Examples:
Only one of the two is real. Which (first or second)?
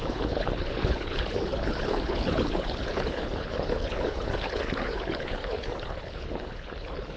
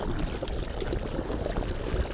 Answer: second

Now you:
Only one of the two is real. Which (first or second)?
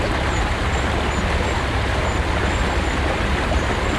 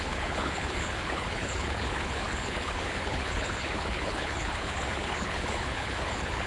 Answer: first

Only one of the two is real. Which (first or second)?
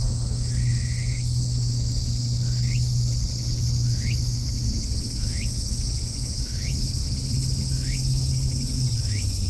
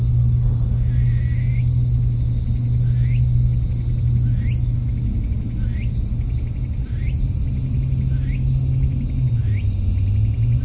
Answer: second